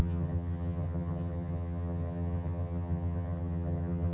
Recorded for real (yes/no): no